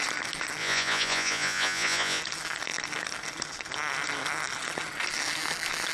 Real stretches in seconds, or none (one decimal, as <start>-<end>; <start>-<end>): 0.0-0.6; 2.2-5.9